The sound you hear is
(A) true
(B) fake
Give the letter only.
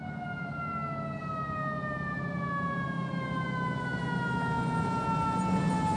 A